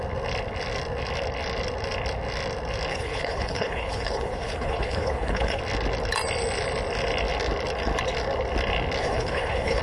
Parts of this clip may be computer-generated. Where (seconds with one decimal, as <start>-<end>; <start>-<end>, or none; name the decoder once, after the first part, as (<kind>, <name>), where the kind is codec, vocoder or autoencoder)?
2.9-5.6 (codec, HILCodec); 9.0-9.8